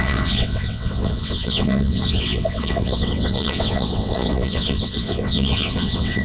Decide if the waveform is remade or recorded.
remade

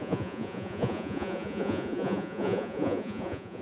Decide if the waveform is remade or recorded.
remade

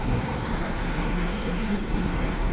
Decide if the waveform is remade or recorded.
remade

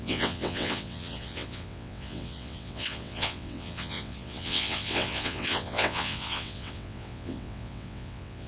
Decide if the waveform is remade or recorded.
remade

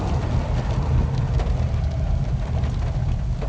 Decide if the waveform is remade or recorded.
recorded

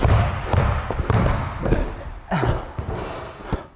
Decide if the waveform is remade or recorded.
recorded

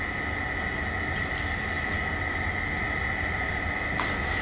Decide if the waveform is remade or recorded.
recorded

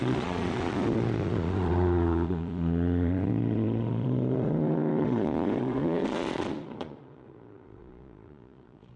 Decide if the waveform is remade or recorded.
remade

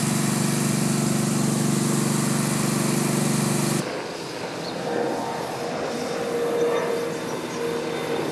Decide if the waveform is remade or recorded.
recorded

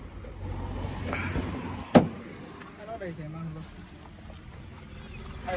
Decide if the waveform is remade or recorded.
recorded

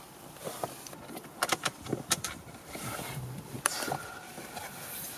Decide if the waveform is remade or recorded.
remade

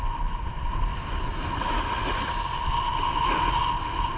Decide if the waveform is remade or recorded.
recorded